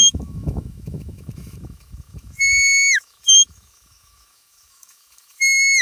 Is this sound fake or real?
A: fake